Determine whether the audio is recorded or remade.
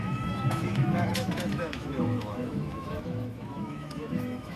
remade